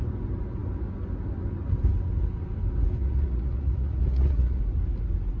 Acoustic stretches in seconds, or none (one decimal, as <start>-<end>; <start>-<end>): 0.0-3.0; 4.6-5.4

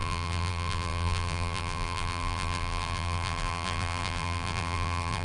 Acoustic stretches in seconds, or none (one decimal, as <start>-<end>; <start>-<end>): none